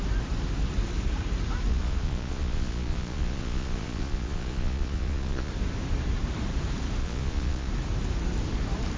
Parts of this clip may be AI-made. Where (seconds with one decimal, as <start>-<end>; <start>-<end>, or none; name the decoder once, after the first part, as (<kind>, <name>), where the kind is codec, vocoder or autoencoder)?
1.7-5.5 (vocoder, Vocos); 7.0-7.7